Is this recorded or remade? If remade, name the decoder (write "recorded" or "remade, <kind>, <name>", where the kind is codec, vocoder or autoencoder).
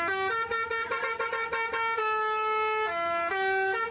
recorded